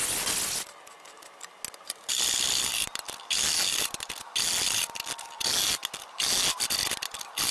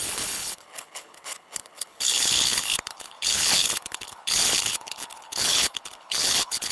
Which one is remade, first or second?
second